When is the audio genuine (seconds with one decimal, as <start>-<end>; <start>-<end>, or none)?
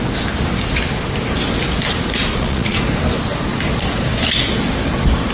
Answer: 0.0-2.2; 2.8-5.3